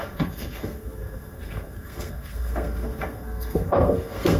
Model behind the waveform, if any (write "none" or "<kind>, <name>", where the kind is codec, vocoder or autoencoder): codec, SNAC